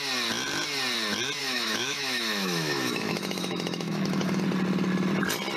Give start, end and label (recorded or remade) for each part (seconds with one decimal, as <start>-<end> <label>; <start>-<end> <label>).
0.0-1.4 recorded; 1.4-4.4 remade; 4.4-5.6 recorded